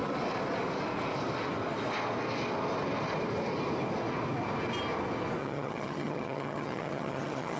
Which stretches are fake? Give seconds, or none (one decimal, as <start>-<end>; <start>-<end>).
5.4-7.6